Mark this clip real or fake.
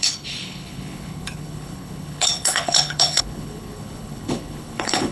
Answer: fake